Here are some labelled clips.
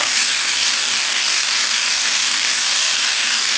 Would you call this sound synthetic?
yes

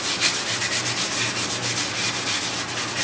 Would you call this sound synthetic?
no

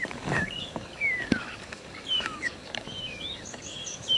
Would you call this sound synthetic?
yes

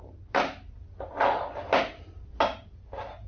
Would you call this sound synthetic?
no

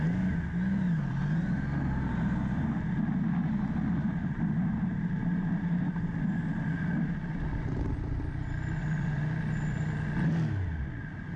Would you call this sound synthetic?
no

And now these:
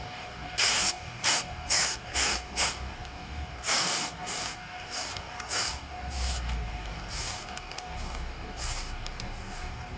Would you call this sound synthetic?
yes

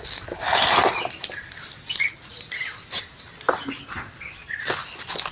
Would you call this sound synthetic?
no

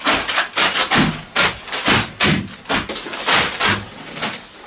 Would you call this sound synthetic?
no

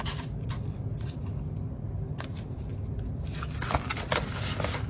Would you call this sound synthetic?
no